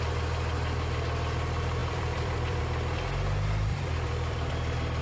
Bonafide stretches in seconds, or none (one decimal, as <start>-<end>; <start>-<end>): 0.0-1.8; 2.6-3.7; 4.5-5.0

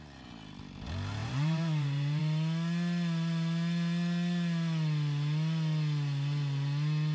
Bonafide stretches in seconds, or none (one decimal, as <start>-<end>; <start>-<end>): 0.0-1.2; 2.2-7.1

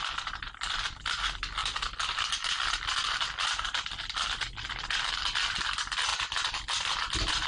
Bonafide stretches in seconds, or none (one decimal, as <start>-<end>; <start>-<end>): 0.0-7.5